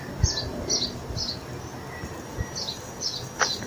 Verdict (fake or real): real